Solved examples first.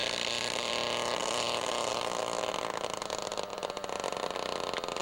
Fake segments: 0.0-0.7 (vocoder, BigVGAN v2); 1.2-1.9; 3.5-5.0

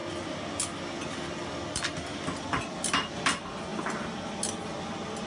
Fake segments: none

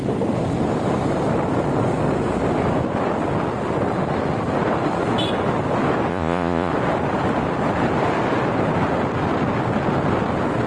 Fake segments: 6.1-6.7 (vocoder, Vocos)